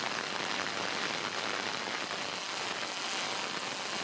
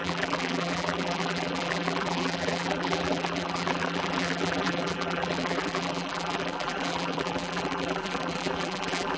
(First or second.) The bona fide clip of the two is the first